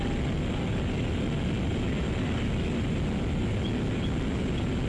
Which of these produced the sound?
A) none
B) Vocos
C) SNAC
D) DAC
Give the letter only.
A